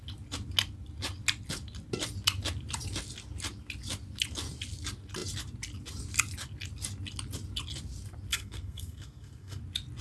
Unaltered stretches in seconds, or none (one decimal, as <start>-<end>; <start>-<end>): 0.0-8.3; 9.6-10.0